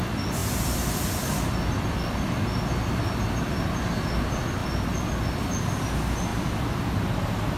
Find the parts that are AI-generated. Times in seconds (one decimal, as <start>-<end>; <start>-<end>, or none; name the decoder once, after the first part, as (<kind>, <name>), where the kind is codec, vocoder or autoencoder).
none